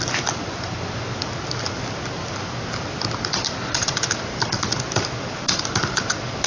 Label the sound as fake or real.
real